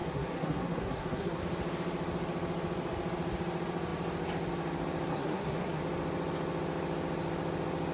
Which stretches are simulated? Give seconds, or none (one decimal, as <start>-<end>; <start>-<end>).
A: 0.0-1.4; 5.1-5.8